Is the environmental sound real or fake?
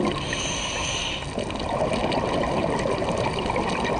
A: real